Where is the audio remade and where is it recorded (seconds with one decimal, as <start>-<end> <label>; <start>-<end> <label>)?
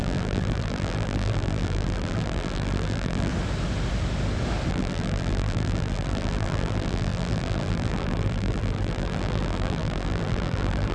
0.0-3.3 remade; 3.3-4.7 recorded; 4.7-10.9 remade